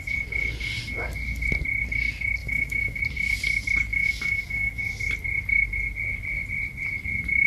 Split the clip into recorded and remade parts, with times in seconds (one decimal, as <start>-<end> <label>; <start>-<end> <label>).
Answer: 0.0-2.4 recorded; 2.4-3.0 remade; 3.0-3.9 recorded; 3.9-4.8 remade; 4.8-7.5 recorded

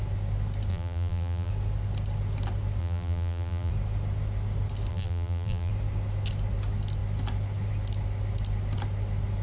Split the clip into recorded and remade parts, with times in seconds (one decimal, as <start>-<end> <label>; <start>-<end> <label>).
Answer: 0.0-0.7 recorded; 0.7-1.5 remade; 1.5-2.8 recorded; 2.8-3.7 remade; 3.7-4.9 recorded; 4.9-5.7 remade; 5.7-9.4 recorded

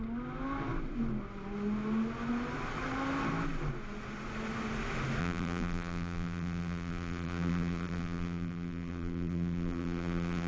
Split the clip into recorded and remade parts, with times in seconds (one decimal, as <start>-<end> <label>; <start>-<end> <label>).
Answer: 0.0-5.2 recorded; 5.2-10.5 remade

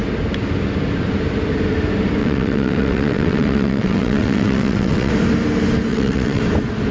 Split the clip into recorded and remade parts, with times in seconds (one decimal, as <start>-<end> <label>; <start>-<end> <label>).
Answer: 0.0-2.2 recorded; 2.2-5.1 remade; 5.1-5.9 recorded; 5.9-6.4 remade; 6.4-6.9 recorded

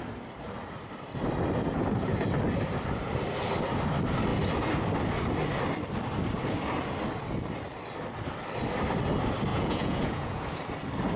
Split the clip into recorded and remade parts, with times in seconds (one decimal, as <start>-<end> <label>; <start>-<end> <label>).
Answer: 0.0-9.5 recorded; 9.5-10.4 remade; 10.4-11.2 recorded

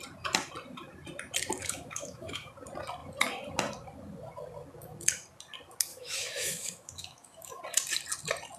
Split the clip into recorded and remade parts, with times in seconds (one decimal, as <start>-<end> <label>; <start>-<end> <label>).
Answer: 0.0-1.6 recorded; 1.6-2.5 remade; 2.5-5.9 recorded; 5.9-7.6 remade; 7.6-8.6 recorded

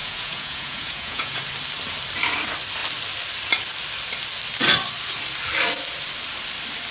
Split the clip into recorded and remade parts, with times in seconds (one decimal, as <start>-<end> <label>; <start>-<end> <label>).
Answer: 0.0-1.4 remade; 1.4-6.9 recorded

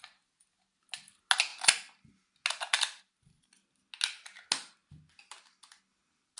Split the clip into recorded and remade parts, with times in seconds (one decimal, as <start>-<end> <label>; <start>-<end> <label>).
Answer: 0.0-6.4 recorded